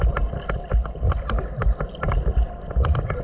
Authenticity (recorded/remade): recorded